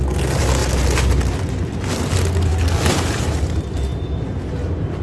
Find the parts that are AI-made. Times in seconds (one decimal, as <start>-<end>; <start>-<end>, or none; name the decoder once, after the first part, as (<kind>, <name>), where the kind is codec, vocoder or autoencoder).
none